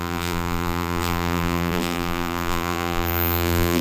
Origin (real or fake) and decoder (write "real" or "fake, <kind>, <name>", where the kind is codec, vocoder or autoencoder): fake, vocoder, BigVGAN v2